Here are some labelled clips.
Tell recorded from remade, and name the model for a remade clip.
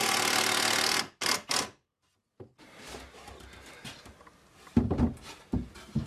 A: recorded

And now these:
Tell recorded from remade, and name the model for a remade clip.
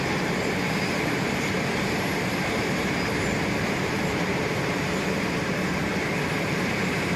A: remade, vocoder, BigVGAN v2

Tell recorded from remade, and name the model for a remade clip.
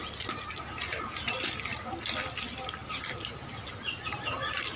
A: recorded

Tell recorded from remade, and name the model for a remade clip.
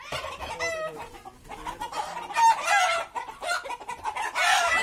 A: recorded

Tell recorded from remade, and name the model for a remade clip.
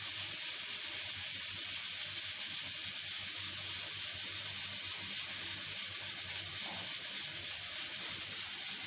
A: recorded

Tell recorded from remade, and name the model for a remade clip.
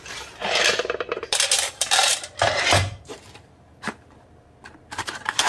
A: remade, vocoder, BigVGAN v2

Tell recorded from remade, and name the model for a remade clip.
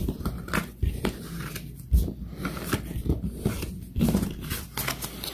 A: recorded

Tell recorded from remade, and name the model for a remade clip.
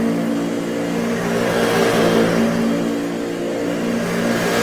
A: recorded